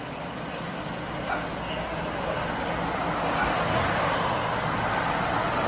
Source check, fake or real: real